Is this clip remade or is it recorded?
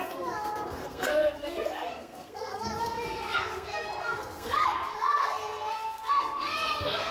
remade